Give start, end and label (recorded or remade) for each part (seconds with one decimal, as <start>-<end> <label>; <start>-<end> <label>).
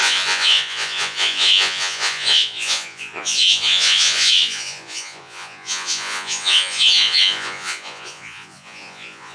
0.0-9.3 remade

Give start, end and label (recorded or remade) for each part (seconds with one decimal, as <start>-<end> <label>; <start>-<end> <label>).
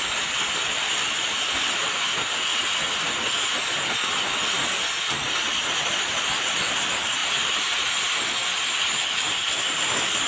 0.0-10.3 recorded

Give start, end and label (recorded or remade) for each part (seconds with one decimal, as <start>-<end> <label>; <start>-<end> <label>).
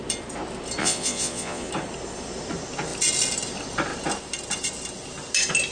0.0-0.8 recorded; 0.8-1.7 remade; 1.7-5.7 recorded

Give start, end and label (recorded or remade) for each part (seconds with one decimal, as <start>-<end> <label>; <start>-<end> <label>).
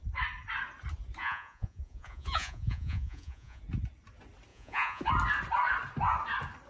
0.0-1.2 recorded; 1.2-3.6 remade; 3.6-4.5 recorded; 4.5-5.0 remade; 5.0-6.7 recorded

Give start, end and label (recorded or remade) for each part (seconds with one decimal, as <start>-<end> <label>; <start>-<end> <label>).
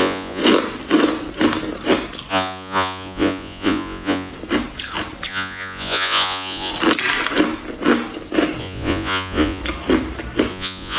0.0-0.4 remade; 0.4-2.3 recorded; 2.3-4.3 remade; 4.3-5.3 recorded; 5.3-6.7 remade; 6.7-8.6 recorded; 8.6-9.6 remade; 9.6-10.5 recorded; 10.5-11.0 remade